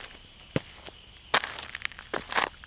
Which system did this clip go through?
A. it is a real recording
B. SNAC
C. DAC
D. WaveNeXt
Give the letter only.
A